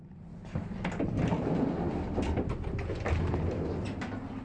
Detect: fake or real real